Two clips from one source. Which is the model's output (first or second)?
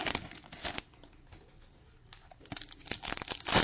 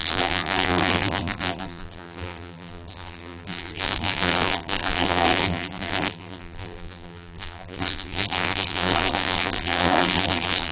second